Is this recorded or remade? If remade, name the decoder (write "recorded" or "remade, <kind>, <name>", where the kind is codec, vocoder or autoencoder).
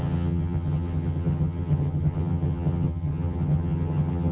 remade, vocoder, HiFi-GAN